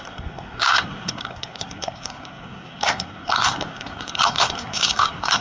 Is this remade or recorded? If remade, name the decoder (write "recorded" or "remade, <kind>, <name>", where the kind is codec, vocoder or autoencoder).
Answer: remade, codec, SNAC